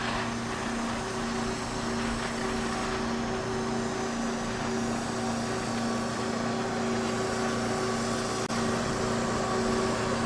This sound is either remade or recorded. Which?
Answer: recorded